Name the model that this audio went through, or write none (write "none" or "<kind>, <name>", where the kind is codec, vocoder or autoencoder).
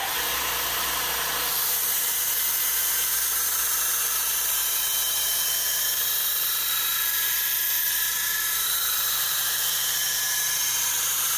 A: vocoder, BigVGAN v2